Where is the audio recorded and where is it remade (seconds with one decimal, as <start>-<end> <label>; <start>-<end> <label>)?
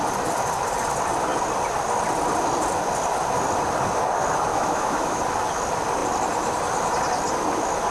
0.0-4.5 recorded; 4.5-5.2 remade; 5.2-7.9 recorded